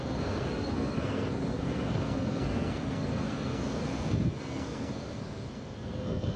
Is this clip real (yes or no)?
no